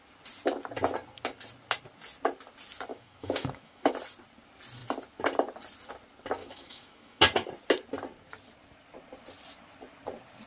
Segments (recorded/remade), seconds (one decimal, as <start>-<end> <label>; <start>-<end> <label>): 0.0-2.9 recorded; 2.9-3.9 remade; 3.9-6.4 recorded; 6.4-7.2 remade; 7.2-10.5 recorded